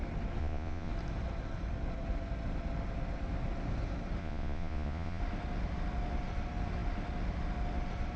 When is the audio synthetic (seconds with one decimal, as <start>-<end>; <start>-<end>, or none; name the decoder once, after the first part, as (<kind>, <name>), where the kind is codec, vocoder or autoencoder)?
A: 0.4-0.9 (vocoder, Vocos); 4.2-5.2